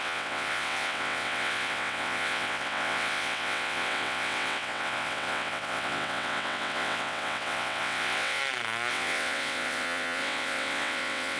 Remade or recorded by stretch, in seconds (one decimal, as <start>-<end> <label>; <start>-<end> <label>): 0.0-8.4 remade; 8.4-8.9 recorded; 8.9-11.4 remade